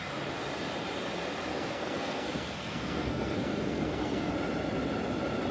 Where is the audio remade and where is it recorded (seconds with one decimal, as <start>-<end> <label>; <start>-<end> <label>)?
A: 0.0-1.5 recorded; 1.5-4.3 remade; 4.3-5.5 recorded